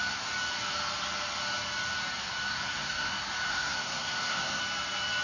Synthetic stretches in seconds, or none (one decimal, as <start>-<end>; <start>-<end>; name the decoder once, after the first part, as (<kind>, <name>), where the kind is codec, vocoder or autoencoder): 2.5-3.1 (codec, SNAC); 3.5-4.6